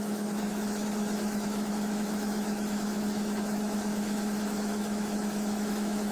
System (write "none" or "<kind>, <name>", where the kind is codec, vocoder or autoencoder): autoencoder, DAC-VAE